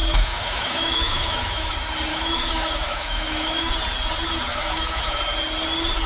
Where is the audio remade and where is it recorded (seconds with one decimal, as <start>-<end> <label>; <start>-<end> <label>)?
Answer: 0.0-1.7 remade; 1.7-2.1 recorded; 2.1-3.7 remade; 3.7-4.5 recorded; 4.5-5.2 remade; 5.2-6.1 recorded